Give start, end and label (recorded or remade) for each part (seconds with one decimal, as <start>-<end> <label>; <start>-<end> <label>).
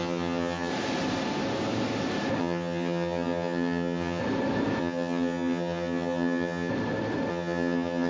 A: 0.0-0.7 remade; 0.7-2.4 recorded; 2.4-4.2 remade; 4.2-4.8 recorded; 4.8-6.7 remade; 6.7-7.3 recorded; 7.3-8.1 remade